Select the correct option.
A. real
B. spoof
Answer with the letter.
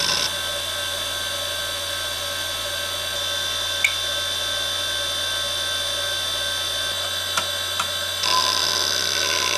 A